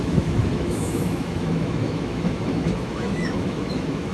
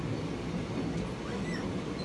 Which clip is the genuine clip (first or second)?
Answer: second